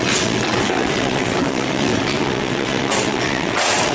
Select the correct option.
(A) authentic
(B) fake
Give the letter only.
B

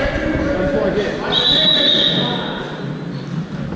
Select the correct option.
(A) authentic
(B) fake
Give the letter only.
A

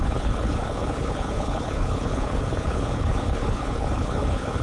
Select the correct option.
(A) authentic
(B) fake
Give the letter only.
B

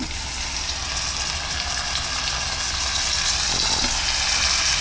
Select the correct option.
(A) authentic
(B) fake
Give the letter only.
A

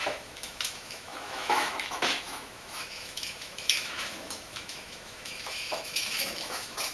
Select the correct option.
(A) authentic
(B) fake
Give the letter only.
B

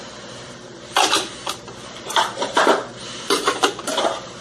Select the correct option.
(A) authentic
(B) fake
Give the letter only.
B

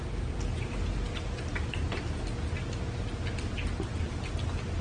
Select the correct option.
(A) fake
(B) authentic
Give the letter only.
B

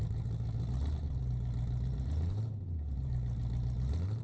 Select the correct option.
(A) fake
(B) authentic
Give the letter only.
A